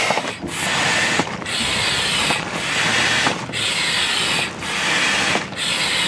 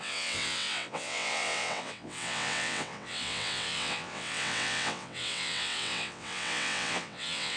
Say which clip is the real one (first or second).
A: first